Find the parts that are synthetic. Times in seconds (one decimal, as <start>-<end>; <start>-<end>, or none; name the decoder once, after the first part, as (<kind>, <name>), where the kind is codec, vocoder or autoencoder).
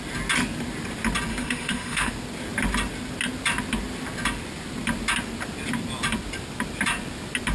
1.3-2.1 (autoencoder, DAC-VAE)